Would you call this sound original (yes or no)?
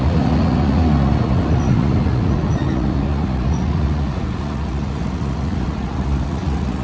no